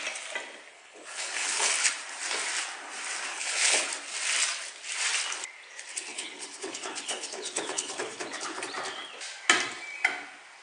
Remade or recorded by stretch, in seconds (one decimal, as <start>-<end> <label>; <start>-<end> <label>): 0.0-0.7 recorded; 0.7-1.7 remade; 1.7-3.3 recorded; 3.3-3.9 remade; 3.9-6.1 recorded; 6.1-8.6 remade; 8.6-10.6 recorded